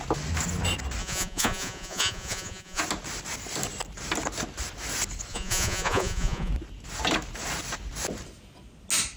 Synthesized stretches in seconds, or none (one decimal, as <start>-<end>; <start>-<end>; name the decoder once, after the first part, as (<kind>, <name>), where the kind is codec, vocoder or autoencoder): 1.0-2.8 (vocoder, Vocos); 5.3-6.5